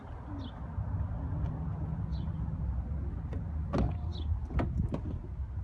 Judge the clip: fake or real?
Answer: real